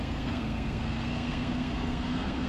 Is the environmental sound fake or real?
fake